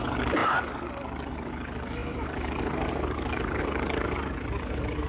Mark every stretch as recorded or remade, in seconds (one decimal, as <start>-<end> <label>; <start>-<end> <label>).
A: 0.0-5.1 remade